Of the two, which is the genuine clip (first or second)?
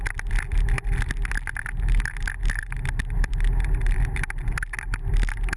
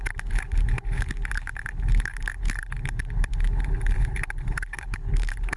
first